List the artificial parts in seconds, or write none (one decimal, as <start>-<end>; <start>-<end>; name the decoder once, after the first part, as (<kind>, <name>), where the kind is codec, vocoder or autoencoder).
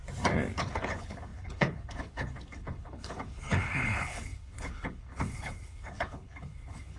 0.6-7.0 (codec, HILCodec)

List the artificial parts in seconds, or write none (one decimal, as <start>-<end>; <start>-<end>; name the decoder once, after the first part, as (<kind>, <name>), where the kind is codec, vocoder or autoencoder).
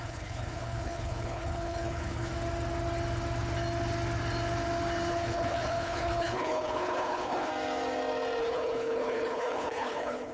0.0-2.3 (codec, HILCodec); 5.1-7.5; 8.4-10.3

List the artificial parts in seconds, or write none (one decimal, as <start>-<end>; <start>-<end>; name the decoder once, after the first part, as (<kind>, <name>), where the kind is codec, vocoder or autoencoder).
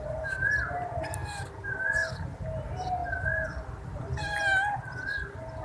none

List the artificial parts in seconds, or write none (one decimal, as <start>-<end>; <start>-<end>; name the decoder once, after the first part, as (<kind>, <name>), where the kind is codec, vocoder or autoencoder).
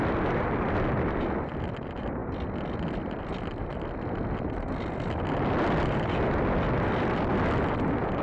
none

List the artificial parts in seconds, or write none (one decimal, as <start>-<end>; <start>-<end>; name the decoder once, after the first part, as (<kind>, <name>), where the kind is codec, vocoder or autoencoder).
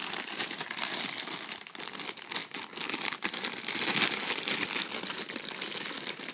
none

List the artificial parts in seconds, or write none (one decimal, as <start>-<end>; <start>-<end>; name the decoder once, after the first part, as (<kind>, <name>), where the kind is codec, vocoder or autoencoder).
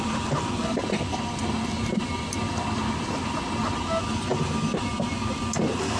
none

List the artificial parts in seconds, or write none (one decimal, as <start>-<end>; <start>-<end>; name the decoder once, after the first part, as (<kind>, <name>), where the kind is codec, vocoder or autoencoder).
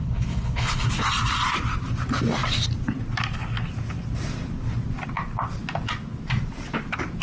0.0-0.9 (codec, HILCodec)